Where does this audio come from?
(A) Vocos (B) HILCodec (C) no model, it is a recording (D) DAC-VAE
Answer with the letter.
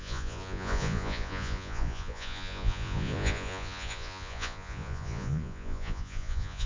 A